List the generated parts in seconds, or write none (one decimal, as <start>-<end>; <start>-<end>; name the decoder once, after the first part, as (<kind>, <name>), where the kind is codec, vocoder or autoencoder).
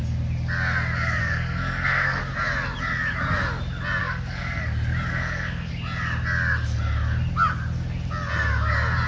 1.2-2.2 (codec, SNAC); 4.0-4.6; 5.1-5.7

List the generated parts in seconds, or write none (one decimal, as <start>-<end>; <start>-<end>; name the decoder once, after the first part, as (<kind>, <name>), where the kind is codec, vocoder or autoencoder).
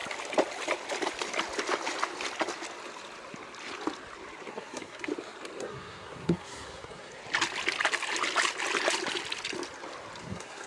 4.5-5.1 (codec, SNAC); 5.6-7.2; 10.2-10.7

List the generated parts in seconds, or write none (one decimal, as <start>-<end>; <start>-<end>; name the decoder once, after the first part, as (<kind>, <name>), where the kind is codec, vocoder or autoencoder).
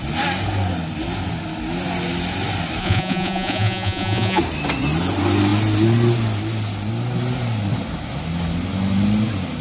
2.8-4.4 (vocoder, Vocos)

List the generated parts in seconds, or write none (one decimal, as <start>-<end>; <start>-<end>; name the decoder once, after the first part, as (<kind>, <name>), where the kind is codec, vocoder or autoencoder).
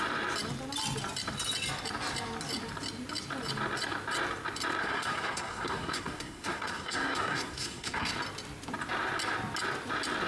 4.8-8.1 (codec, SNAC)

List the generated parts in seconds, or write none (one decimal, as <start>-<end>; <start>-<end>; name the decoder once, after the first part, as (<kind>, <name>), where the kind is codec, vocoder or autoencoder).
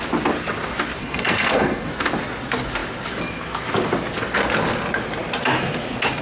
1.0-1.9 (codec, SNAC)